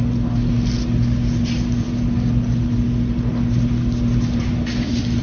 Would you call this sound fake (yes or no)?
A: no